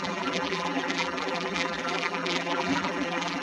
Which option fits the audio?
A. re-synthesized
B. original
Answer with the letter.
A